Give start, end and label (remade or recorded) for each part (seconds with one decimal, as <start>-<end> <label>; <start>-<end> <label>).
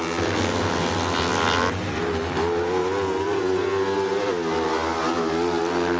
0.0-6.0 recorded